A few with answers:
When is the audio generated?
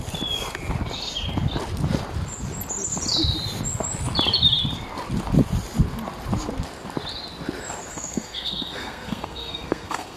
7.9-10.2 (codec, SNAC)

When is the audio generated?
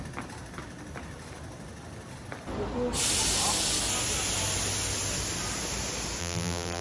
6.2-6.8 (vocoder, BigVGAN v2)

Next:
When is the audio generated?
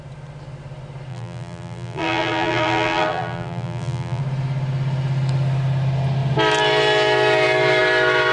1.1-4.2 (vocoder, BigVGAN v2)